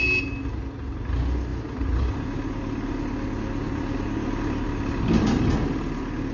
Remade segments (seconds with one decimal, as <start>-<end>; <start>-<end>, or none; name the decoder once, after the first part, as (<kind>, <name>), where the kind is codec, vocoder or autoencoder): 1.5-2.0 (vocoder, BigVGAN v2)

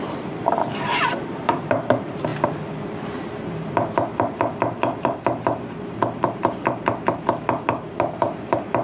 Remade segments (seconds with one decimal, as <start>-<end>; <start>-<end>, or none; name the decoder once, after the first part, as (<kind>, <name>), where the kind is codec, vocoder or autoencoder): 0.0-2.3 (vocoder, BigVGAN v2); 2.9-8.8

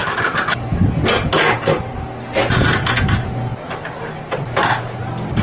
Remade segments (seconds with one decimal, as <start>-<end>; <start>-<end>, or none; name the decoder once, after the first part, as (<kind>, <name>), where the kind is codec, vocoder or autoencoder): 0.0-1.3 (vocoder, BigVGAN v2)